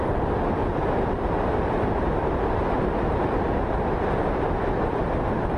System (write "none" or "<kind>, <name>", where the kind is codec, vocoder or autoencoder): none